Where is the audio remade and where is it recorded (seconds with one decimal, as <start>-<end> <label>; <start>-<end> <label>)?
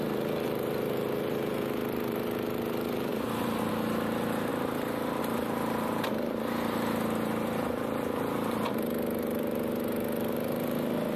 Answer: 0.0-11.2 remade